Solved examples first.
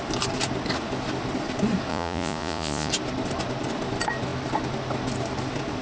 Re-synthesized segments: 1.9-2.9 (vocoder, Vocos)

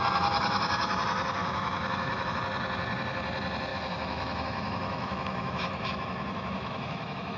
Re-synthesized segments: 1.4-2.4 (autoencoder, DAC-VAE); 3.7-7.4

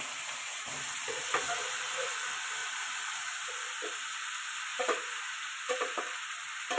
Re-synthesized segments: 2.6-3.5 (vocoder, BigVGAN v2); 4.7-6.0